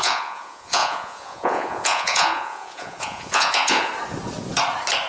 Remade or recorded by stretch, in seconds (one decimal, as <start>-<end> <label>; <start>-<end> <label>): 0.0-3.9 remade; 3.9-5.1 recorded